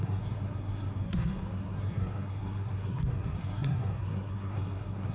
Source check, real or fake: fake